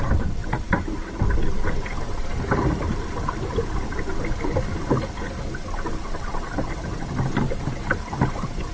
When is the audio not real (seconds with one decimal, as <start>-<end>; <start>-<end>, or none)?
none